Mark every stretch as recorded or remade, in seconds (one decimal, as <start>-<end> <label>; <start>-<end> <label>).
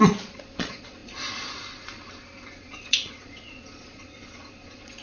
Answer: 0.0-5.0 remade